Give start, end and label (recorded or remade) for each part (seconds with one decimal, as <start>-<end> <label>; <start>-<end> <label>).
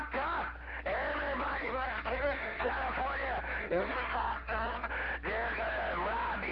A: 0.0-1.6 recorded; 1.6-2.7 remade; 2.7-3.6 recorded; 3.6-4.9 remade; 4.9-6.5 recorded